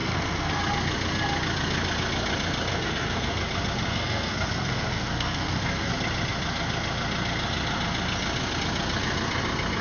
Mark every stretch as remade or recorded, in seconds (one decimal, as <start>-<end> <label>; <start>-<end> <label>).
0.0-0.6 remade; 0.6-2.7 recorded; 2.7-3.3 remade; 3.3-3.9 recorded; 3.9-5.9 remade; 5.9-9.8 recorded